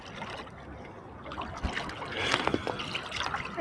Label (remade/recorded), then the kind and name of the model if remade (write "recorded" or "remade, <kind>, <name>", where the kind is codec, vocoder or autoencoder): recorded